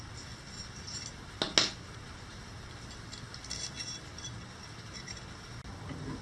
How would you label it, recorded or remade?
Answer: recorded